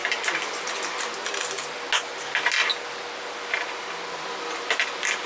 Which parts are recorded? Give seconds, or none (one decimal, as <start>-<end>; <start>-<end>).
0.0-5.3